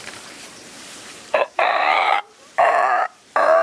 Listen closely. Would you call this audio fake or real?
fake